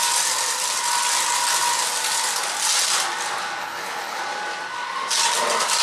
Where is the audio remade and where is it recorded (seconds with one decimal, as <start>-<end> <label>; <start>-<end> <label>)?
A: 0.0-3.6 recorded; 3.6-4.2 remade; 4.2-5.8 recorded